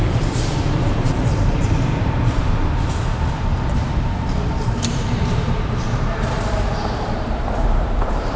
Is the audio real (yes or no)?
no